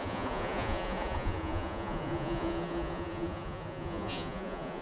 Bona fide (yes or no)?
no